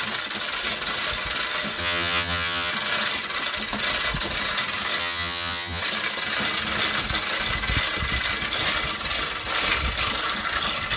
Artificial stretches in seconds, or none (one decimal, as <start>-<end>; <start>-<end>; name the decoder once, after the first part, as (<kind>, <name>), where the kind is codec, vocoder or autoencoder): 1.8-2.7 (vocoder, HiFi-GAN); 5.0-5.8